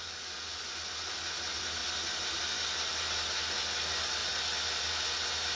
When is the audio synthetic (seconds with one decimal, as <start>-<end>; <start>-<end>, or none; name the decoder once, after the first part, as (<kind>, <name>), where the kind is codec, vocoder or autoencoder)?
none